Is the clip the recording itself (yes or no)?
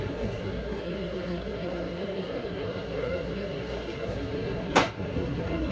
no